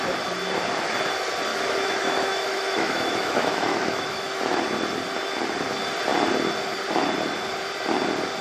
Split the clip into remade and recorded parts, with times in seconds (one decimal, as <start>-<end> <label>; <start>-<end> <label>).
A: 0.0-1.5 recorded; 1.5-4.6 remade; 4.6-8.4 recorded